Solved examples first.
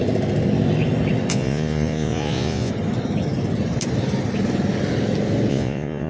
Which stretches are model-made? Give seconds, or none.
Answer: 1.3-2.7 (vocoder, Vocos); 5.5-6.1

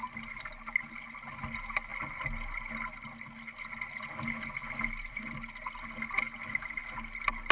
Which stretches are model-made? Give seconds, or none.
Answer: none

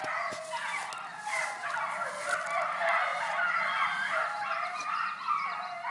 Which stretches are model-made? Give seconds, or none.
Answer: none

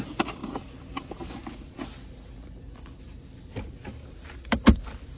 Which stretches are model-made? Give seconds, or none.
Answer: none

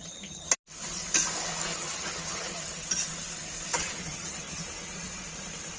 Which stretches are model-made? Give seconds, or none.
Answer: 0.0-0.5 (vocoder, HiFi-GAN); 1.7-2.8; 3.7-4.6

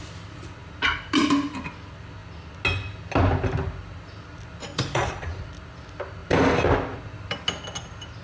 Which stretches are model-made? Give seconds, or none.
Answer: 4.7-5.5 (vocoder, Vocos)

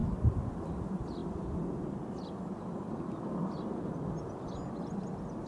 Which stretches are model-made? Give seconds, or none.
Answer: none